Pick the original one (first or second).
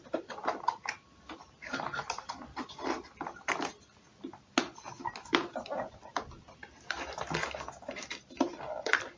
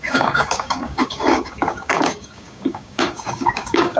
first